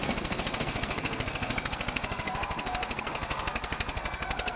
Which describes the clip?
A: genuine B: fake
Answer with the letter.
B